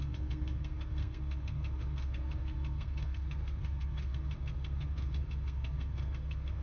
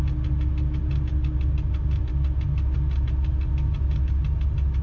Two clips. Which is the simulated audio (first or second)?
first